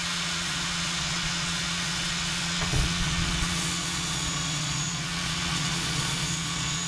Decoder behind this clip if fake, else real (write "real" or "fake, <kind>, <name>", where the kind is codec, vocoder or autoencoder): fake, vocoder, Vocos